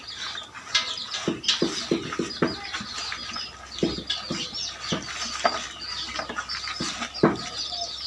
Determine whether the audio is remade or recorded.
recorded